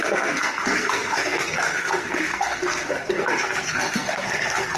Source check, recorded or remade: remade